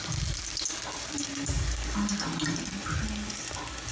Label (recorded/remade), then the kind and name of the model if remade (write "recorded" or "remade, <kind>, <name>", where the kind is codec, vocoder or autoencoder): recorded